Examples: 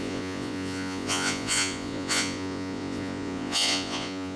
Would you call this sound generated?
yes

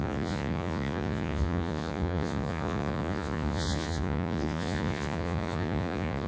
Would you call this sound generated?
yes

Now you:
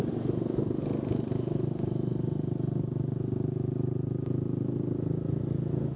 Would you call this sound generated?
no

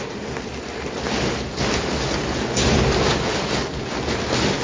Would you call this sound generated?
no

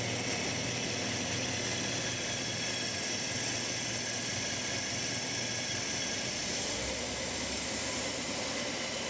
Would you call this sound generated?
no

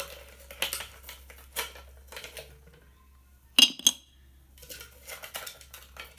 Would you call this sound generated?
no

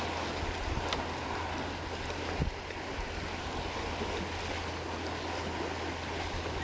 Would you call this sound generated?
no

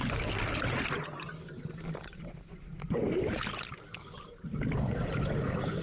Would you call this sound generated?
no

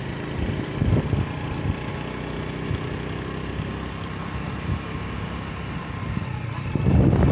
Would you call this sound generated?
no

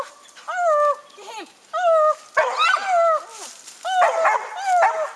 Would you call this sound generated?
no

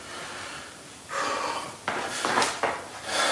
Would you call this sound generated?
no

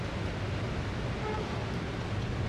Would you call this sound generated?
no